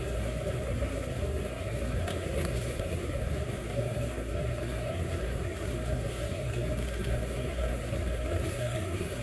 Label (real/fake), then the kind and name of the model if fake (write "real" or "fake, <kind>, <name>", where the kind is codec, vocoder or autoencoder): fake, codec, SNAC